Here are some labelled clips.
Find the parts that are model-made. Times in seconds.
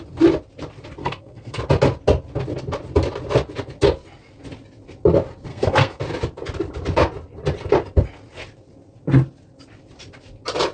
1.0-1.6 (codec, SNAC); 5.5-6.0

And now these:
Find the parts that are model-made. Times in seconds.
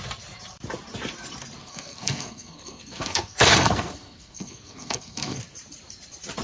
1.6-5.4 (codec, SNAC)